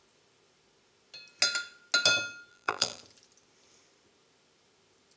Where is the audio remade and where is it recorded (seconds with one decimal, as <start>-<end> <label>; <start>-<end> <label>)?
0.0-2.5 recorded; 2.5-3.0 remade; 3.0-5.2 recorded